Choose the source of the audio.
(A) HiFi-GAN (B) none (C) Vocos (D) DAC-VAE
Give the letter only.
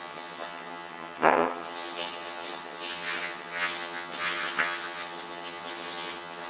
A